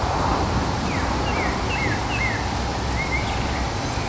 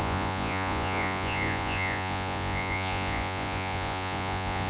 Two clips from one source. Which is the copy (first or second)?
second